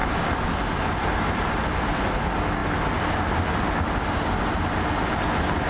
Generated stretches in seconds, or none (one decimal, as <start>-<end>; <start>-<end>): none